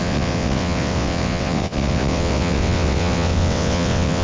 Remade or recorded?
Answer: remade